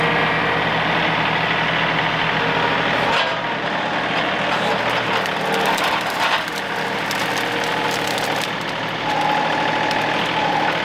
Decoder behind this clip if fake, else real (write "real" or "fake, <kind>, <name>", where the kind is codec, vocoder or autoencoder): real